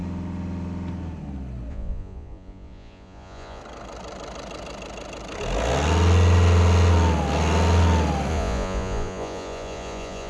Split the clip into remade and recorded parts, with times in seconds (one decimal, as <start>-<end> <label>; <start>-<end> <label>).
0.0-1.7 recorded; 1.7-3.6 remade; 3.6-8.3 recorded; 8.3-10.3 remade